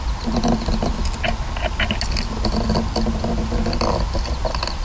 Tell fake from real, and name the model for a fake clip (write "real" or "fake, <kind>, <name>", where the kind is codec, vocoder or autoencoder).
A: real